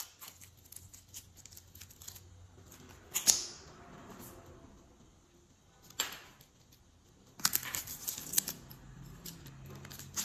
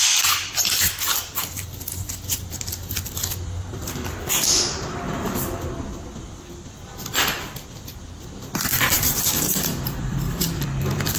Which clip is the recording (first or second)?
first